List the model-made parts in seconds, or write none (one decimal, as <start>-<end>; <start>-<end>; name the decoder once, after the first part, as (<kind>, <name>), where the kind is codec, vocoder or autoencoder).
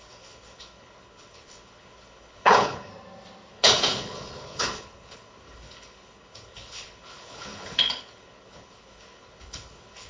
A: 0.0-2.9 (codec, HILCodec); 3.5-10.1